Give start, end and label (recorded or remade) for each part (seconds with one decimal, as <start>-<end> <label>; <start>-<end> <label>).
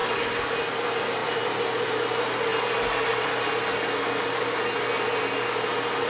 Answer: 0.0-0.5 remade; 0.5-2.5 recorded; 2.5-3.8 remade; 3.8-6.1 recorded